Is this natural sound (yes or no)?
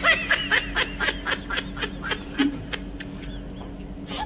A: yes